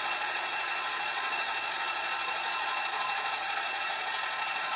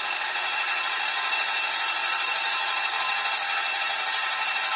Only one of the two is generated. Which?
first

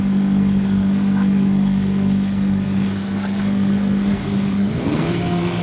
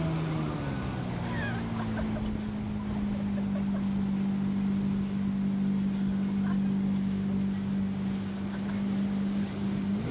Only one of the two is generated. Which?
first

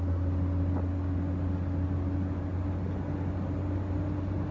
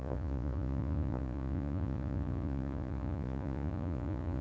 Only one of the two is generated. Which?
second